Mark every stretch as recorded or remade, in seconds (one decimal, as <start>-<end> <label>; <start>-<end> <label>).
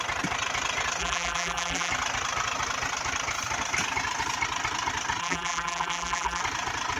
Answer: 0.0-1.0 recorded; 1.0-1.9 remade; 1.9-5.2 recorded; 5.2-6.4 remade; 6.4-7.0 recorded